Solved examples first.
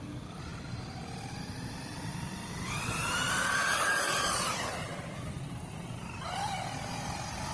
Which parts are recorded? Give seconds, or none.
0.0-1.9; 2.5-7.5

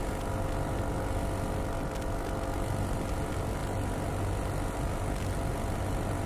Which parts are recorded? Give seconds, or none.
0.0-6.3

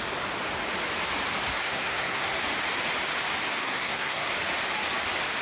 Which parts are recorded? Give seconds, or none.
0.0-1.6; 2.4-3.6; 4.3-5.4

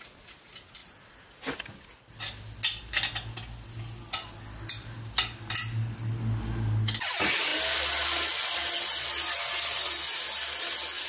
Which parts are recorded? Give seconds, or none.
0.0-11.1

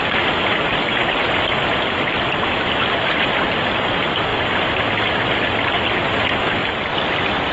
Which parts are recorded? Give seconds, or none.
0.0-7.5

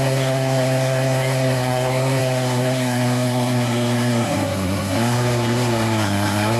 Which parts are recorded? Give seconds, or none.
none